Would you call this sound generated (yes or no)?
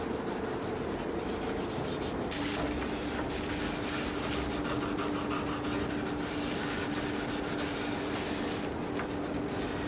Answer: no